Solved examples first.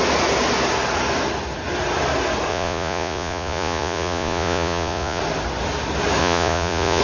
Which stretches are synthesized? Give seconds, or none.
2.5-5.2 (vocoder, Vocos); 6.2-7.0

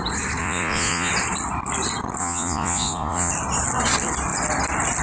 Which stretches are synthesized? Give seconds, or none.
0.4-1.1 (vocoder, Vocos); 2.2-3.3